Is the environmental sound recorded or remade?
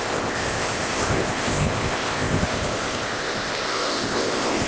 remade